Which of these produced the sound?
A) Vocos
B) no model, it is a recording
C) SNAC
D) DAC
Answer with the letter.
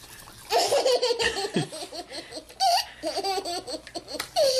B